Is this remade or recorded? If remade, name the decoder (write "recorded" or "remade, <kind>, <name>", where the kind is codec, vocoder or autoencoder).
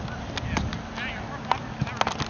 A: recorded